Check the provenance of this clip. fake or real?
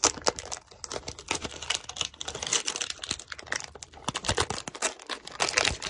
real